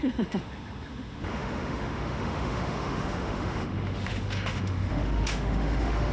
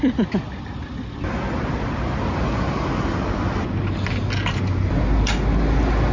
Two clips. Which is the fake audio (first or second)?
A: first